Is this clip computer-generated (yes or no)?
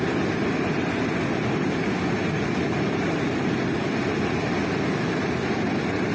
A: no